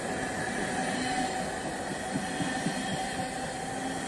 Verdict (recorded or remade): recorded